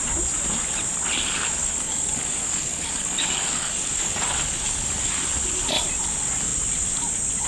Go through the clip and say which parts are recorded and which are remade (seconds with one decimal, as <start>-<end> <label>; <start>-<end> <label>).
0.0-1.6 recorded; 1.6-5.1 remade; 5.1-7.5 recorded